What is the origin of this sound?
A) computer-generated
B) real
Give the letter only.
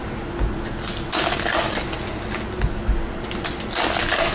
B